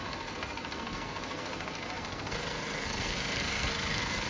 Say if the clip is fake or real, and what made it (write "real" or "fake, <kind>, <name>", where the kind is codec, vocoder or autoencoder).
fake, codec, SNAC